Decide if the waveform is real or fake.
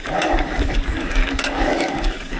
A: fake